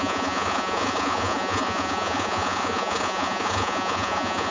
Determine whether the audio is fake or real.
fake